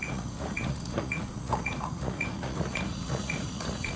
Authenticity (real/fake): fake